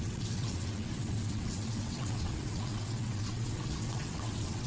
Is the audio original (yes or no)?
no